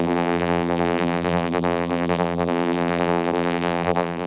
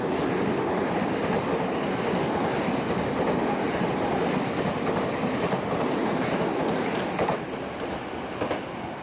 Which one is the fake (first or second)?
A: first